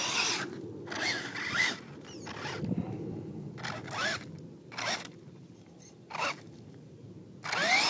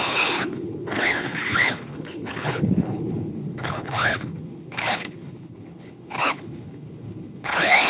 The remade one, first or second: second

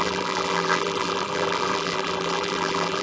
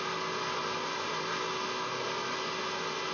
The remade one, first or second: first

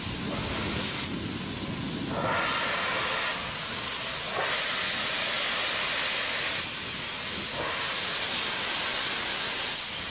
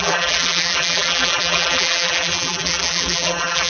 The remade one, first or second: second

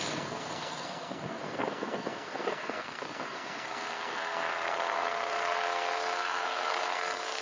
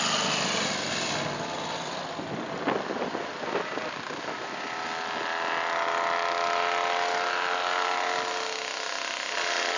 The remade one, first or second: first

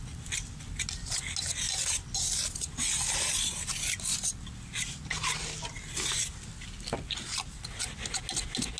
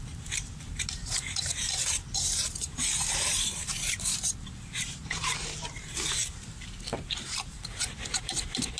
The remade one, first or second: second